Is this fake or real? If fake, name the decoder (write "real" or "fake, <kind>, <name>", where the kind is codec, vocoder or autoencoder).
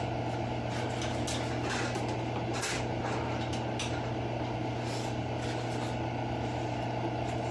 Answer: real